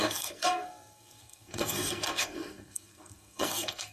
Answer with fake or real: fake